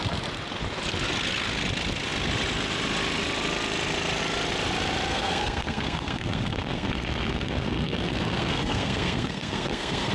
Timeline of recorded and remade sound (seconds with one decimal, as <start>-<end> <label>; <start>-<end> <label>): 0.0-5.1 recorded; 5.1-10.1 remade